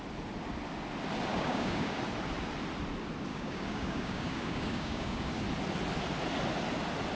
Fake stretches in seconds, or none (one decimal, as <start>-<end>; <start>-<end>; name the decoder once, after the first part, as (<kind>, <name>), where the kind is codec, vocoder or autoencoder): 1.3-2.0 (codec, DAC); 3.3-5.3